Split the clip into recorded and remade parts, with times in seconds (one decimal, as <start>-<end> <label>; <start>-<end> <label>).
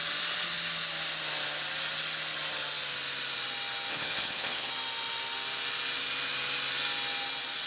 0.0-3.9 recorded; 3.9-4.7 remade; 4.7-7.7 recorded